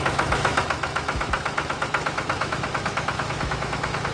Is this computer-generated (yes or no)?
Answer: yes